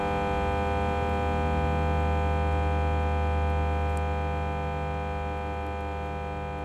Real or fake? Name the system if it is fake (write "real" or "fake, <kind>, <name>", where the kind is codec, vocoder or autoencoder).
real